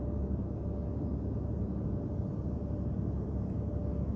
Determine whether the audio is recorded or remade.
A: recorded